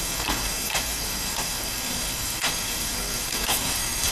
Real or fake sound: fake